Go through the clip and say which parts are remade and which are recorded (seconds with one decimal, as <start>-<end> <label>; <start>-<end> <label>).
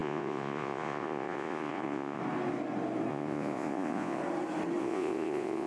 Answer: 0.0-2.2 remade; 2.2-3.1 recorded; 3.1-4.2 remade; 4.2-4.8 recorded; 4.8-5.7 remade